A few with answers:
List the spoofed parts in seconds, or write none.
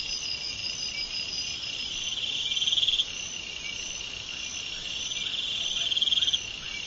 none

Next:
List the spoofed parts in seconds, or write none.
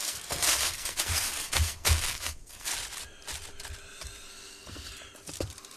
0.0-2.7 (codec, SNAC); 4.3-4.9